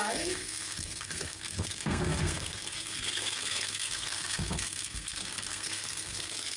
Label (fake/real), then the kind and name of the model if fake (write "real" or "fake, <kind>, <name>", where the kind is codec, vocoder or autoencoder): fake, codec, SNAC